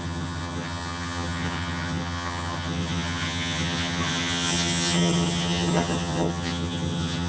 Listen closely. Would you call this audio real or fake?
fake